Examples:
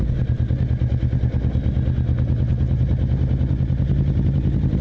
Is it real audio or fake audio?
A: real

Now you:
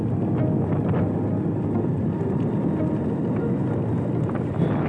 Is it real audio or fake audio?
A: real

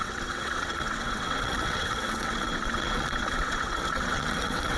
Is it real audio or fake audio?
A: fake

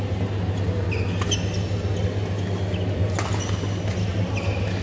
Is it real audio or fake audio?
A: real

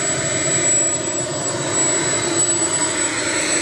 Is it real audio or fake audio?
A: real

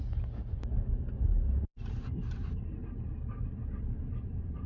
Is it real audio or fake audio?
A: real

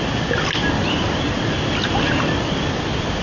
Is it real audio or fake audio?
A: real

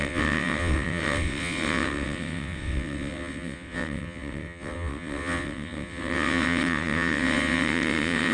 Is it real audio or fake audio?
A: fake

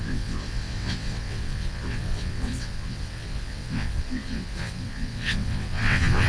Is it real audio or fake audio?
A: fake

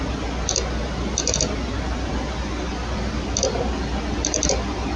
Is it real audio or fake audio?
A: real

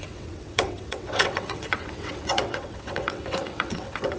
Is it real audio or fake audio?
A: fake